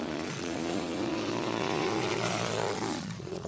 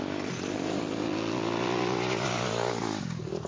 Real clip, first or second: second